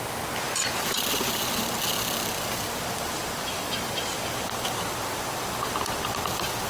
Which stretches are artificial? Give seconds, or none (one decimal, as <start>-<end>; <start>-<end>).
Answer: 0.0-1.4; 2.3-6.7